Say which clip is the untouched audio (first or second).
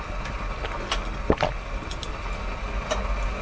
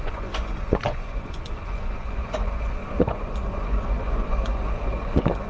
first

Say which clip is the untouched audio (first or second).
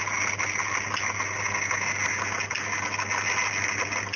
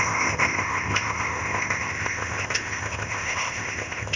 first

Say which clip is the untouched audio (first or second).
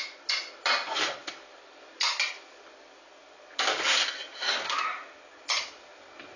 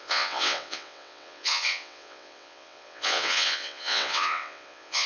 first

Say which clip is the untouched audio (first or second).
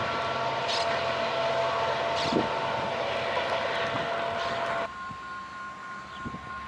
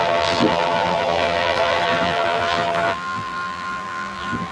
first